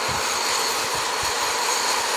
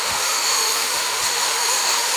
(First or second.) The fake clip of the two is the second